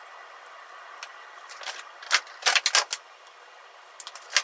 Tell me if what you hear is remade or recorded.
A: recorded